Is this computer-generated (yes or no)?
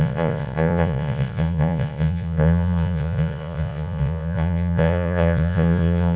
yes